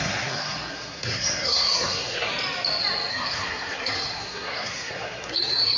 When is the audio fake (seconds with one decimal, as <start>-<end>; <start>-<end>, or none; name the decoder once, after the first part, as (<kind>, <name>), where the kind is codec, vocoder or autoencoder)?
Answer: 0.0-2.3 (codec, SNAC); 3.1-5.8